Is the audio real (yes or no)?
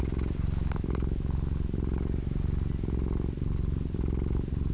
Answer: yes